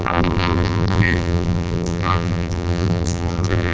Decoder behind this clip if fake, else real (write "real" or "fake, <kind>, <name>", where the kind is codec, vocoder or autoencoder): fake, vocoder, BigVGAN v2